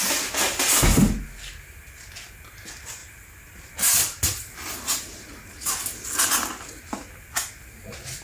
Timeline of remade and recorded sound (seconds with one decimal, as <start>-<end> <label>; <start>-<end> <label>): 0.0-8.2 recorded